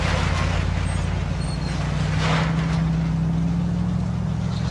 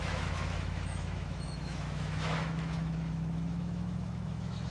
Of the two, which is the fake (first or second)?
second